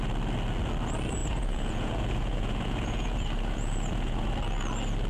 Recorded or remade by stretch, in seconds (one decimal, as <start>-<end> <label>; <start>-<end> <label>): 0.0-1.2 recorded; 1.2-4.3 remade; 4.3-5.1 recorded